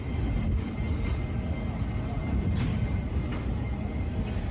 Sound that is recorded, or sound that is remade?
recorded